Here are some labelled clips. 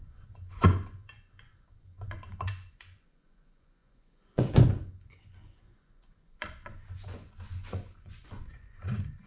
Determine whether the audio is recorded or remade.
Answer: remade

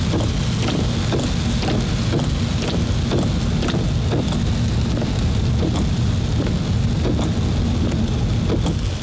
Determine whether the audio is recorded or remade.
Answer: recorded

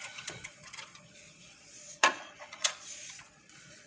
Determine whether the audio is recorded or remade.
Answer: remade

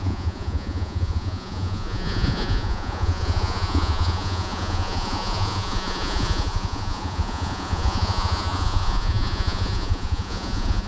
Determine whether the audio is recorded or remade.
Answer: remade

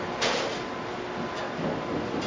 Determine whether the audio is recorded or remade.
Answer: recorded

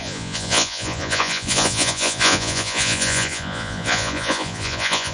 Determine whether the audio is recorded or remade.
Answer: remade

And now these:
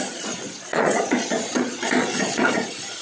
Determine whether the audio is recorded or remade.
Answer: remade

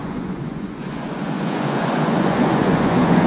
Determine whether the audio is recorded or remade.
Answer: remade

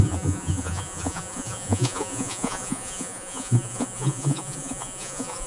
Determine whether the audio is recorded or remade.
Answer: remade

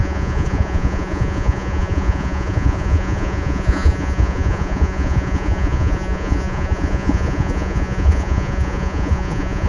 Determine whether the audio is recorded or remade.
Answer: remade